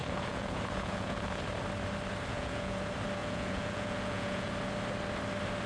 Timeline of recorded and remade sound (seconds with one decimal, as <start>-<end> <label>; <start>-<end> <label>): 0.0-1.4 remade; 1.4-2.3 recorded; 2.3-2.8 remade; 2.8-3.2 recorded; 3.2-4.5 remade; 4.5-5.7 recorded